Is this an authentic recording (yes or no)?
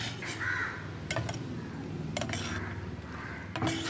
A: yes